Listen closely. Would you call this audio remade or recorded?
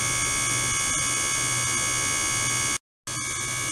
recorded